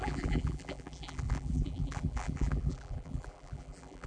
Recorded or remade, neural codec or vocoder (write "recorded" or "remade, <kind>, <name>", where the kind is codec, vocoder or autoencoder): remade, vocoder, BigVGAN v2